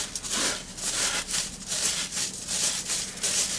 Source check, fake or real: real